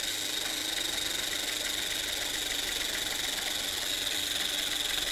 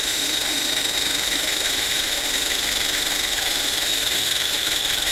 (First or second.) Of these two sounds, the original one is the first